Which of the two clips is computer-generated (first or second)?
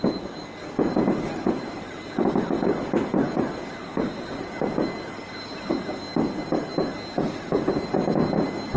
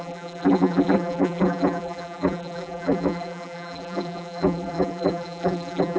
second